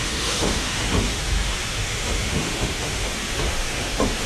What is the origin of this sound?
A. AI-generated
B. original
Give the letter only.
A